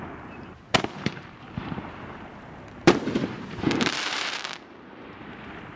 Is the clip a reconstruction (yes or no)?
yes